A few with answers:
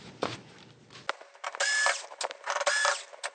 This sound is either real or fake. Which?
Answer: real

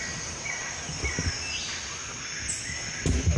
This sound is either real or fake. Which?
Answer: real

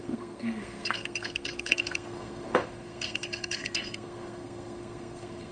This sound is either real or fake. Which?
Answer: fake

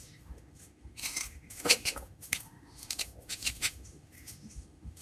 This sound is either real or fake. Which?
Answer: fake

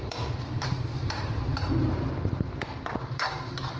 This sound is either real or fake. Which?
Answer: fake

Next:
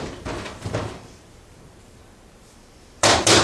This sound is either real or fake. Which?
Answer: fake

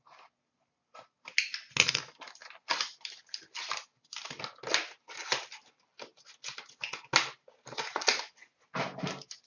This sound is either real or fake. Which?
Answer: real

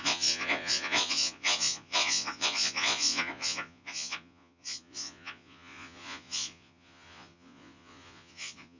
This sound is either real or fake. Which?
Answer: fake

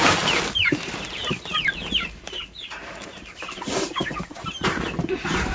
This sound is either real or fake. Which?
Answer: fake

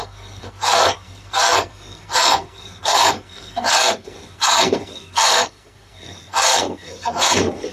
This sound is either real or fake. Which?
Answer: fake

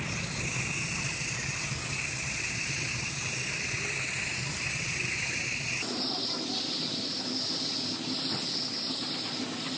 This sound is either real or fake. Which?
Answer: real